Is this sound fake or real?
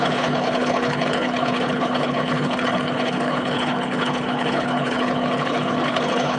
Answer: fake